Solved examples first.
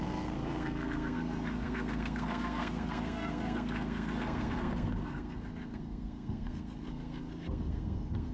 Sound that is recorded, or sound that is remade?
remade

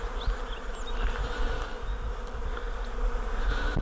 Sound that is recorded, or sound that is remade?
recorded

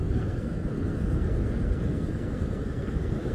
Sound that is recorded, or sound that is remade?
remade